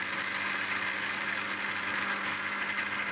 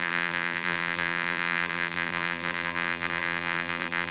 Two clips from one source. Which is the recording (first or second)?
first